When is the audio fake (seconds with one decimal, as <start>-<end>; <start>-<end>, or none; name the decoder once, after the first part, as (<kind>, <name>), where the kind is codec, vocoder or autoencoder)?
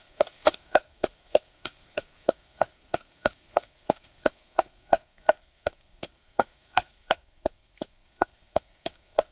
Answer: 0.0-9.3 (codec, SNAC)